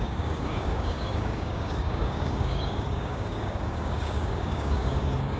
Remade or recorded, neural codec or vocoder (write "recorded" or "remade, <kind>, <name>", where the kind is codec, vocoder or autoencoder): remade, codec, DAC